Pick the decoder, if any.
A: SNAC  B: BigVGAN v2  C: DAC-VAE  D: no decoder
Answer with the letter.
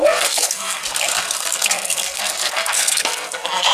A